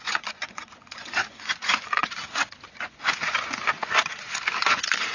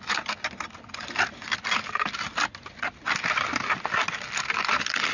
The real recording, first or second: second